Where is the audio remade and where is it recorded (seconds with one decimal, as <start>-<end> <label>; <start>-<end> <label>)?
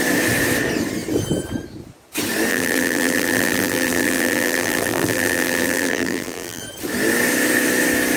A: 0.0-2.5 recorded; 2.5-6.6 remade; 6.6-8.2 recorded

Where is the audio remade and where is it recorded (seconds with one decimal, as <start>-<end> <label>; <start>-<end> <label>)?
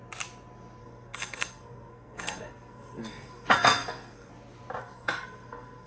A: 0.0-0.8 recorded; 0.8-4.3 remade; 4.3-4.8 recorded; 4.8-5.9 remade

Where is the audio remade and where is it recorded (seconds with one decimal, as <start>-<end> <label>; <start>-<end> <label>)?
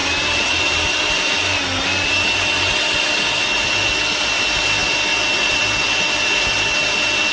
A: 0.0-2.1 remade; 2.1-7.3 recorded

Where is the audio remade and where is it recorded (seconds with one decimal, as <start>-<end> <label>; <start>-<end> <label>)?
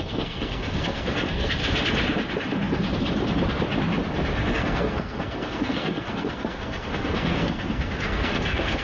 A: 0.0-1.6 remade; 1.6-4.5 recorded; 4.5-8.8 remade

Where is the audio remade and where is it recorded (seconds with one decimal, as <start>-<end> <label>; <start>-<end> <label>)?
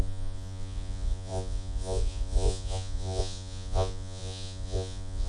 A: 0.0-5.3 remade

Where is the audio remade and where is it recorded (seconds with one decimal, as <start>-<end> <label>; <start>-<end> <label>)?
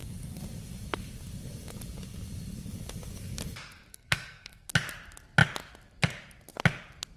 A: 0.0-3.9 recorded; 3.9-4.7 remade; 4.7-7.2 recorded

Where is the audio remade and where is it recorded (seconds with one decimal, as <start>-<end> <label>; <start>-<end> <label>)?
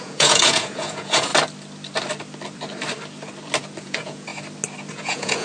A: 0.0-1.3 remade; 1.3-3.8 recorded; 3.8-4.3 remade; 4.3-4.9 recorded; 4.9-5.4 remade